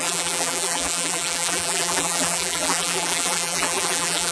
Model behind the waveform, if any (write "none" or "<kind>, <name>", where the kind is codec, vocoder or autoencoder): vocoder, BigVGAN v2